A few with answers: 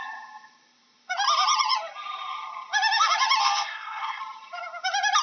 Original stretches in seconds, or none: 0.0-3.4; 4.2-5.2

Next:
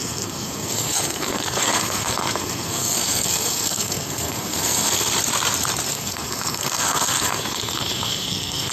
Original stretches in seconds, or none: 5.1-5.9